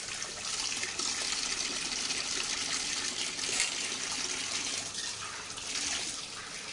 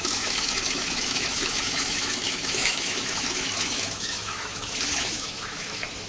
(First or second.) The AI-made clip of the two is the second